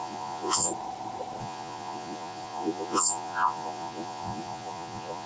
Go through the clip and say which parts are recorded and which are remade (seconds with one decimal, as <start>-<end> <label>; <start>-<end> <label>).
0.0-0.7 remade; 0.7-1.4 recorded; 1.4-5.3 remade